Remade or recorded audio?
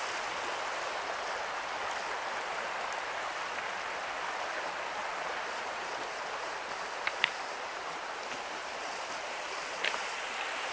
recorded